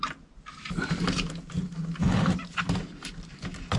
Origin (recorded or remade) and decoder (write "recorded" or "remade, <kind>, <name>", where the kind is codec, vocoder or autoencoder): recorded